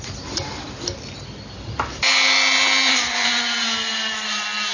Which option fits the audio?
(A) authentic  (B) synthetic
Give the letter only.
A